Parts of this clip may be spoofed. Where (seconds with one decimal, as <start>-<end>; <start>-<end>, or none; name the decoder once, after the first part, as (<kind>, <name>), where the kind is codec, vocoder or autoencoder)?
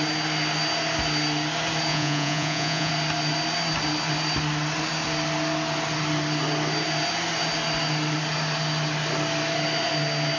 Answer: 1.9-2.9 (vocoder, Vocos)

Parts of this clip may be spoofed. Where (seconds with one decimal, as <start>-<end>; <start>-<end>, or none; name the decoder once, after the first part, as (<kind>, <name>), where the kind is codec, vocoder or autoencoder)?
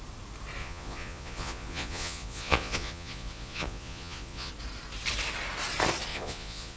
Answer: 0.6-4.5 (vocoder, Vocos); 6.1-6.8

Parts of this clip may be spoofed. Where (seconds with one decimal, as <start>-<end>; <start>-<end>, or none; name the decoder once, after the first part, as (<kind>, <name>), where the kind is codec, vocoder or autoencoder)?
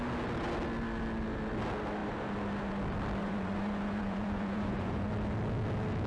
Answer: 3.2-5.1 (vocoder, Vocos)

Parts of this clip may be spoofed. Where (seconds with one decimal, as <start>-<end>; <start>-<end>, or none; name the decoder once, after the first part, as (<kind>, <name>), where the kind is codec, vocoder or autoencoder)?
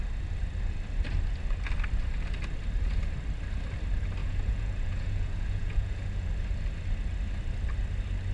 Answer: 4.2-6.3 (vocoder, Vocos)